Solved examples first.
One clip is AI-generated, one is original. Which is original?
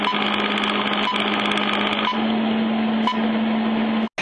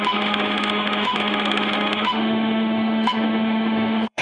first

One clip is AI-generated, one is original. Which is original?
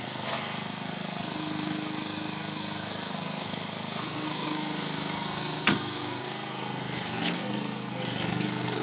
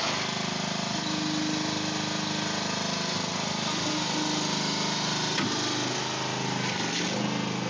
second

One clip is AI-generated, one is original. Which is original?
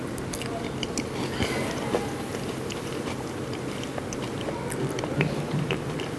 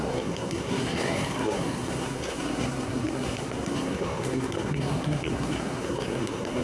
first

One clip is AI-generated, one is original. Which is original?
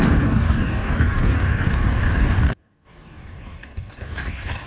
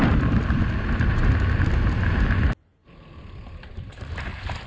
second